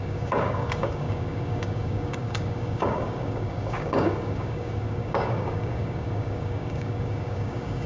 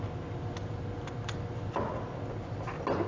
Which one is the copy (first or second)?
first